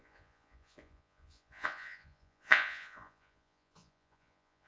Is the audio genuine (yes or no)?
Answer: no